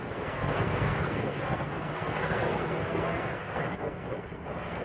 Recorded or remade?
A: remade